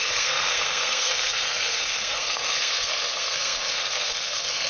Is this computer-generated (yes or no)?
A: yes